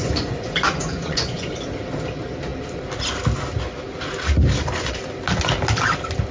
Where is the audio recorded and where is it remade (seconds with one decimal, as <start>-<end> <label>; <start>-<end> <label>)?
0.0-1.5 remade; 1.5-6.3 recorded